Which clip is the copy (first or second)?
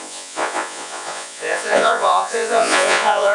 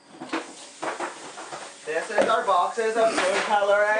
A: first